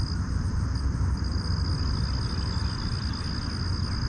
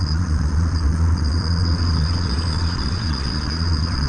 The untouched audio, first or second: first